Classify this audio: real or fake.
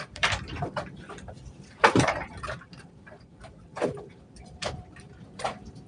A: fake